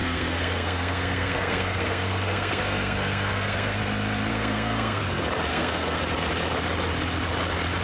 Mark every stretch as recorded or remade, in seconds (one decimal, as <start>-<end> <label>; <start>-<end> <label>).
0.0-3.8 remade; 3.8-4.3 recorded; 4.3-5.0 remade; 5.0-5.5 recorded; 5.5-6.0 remade; 6.0-7.8 recorded